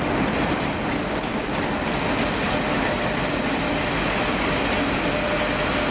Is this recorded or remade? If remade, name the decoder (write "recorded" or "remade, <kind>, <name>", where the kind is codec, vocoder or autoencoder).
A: recorded